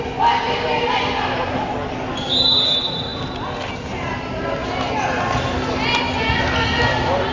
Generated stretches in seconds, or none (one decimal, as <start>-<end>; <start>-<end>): none